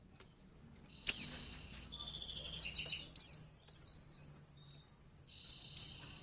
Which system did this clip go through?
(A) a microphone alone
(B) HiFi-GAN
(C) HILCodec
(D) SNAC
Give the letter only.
A